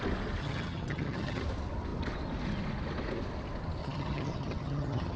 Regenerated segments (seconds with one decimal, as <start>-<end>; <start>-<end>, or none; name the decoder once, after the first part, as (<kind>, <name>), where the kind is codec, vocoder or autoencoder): 0.4-1.4 (vocoder, HiFi-GAN); 3.8-5.2